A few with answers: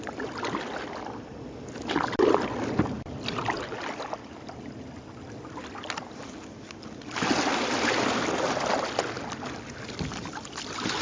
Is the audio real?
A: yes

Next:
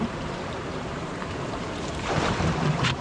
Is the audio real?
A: no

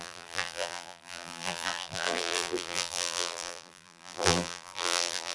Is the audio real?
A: no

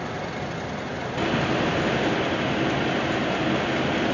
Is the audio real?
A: yes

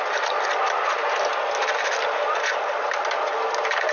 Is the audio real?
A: yes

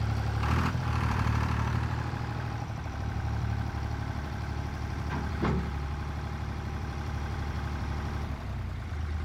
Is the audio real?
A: no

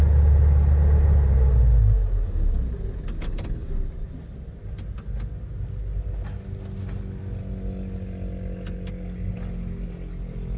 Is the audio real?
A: yes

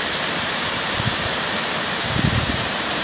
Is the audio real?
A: no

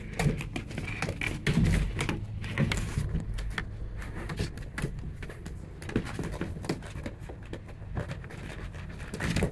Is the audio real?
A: yes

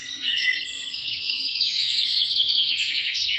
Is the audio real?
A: no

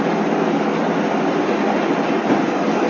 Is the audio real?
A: yes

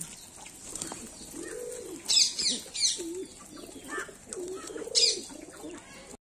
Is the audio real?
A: yes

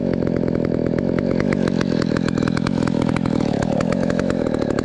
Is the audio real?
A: no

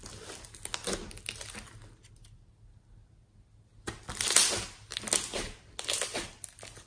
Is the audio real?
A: yes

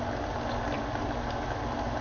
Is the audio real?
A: yes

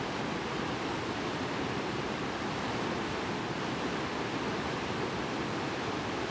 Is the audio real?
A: yes